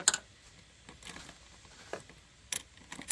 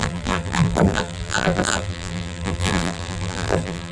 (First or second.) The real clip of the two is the first